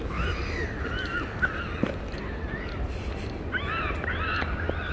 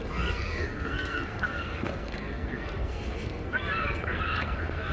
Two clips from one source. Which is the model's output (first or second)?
second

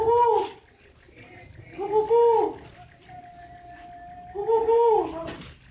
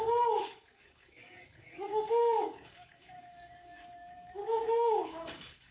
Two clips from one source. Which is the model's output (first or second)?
second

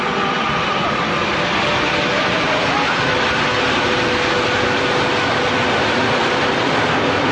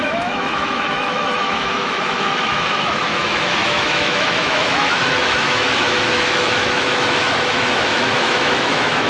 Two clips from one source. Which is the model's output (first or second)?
second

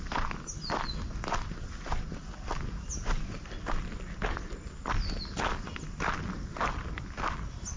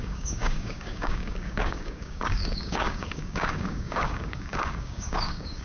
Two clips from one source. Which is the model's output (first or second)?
second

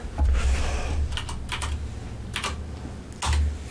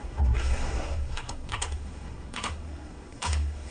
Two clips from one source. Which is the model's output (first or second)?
second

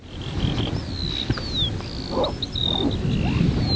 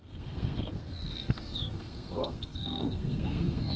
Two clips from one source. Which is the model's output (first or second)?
second